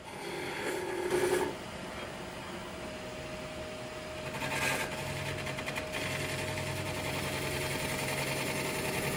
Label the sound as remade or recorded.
recorded